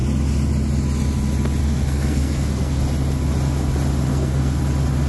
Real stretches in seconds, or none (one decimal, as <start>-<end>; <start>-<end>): 0.0-1.6; 2.8-4.1; 4.6-5.1